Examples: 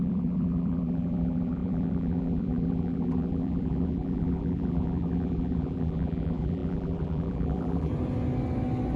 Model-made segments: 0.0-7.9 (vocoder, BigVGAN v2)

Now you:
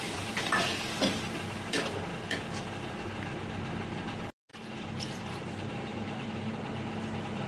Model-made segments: 0.0-0.7 (vocoder, BigVGAN v2); 4.5-6.5

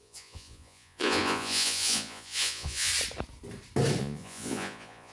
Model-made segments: 0.0-2.9 (vocoder, Vocos); 4.0-5.1

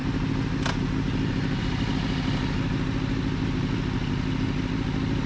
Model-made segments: none

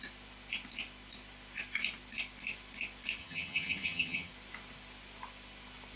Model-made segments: 3.2-4.3 (vocoder, HiFi-GAN)

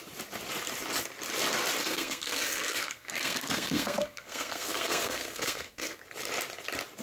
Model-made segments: 1.8-6.0 (codec, SNAC)

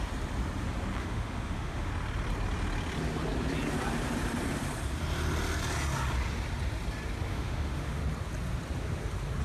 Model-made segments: 1.0-1.9 (autoencoder, DAC-VAE); 7.3-8.0

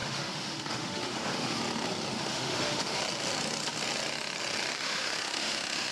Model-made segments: 0.0-1.6 (autoencoder, DAC-VAE); 2.1-3.0; 4.7-5.9